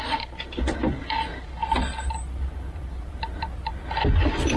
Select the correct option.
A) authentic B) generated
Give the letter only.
A